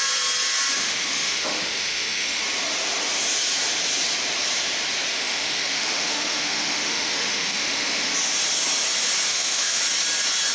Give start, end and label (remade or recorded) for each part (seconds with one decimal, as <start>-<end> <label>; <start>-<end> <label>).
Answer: 0.0-0.8 recorded; 0.8-2.4 remade; 2.4-5.1 recorded; 5.1-8.1 remade; 8.1-9.3 recorded; 9.3-9.8 remade; 9.8-10.5 recorded